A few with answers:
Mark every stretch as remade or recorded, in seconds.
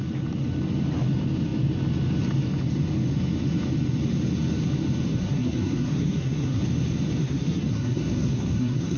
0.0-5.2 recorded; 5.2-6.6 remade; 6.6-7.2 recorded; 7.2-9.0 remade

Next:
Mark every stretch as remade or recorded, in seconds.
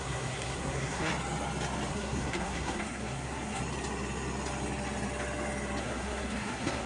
0.0-1.1 remade; 1.1-1.9 recorded; 1.9-3.6 remade; 3.6-5.8 recorded; 5.8-6.9 remade